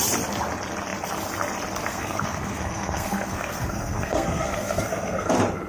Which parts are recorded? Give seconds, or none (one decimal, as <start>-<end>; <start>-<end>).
0.0-1.9; 5.3-5.7